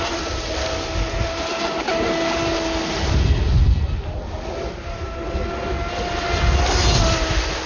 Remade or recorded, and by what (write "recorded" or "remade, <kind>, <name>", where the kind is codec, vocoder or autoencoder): recorded